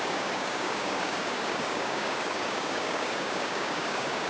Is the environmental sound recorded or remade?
remade